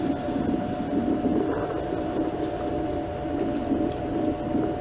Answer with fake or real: real